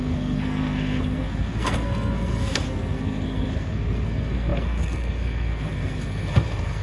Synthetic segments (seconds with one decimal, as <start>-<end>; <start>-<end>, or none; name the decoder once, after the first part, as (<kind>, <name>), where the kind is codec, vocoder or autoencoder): 0.0-6.8 (codec, SNAC)